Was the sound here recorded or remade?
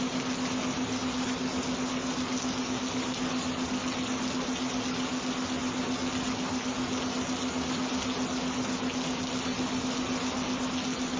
recorded